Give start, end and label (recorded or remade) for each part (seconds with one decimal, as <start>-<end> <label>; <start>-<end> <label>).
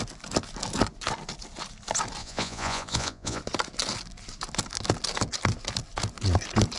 0.0-2.2 recorded; 2.2-3.4 remade; 3.4-6.8 recorded